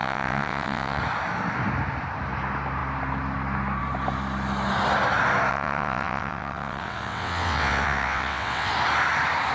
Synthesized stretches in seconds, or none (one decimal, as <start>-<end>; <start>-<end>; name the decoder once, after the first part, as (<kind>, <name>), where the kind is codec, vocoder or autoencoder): 0.0-1.0 (vocoder, WaveNeXt); 5.5-8.7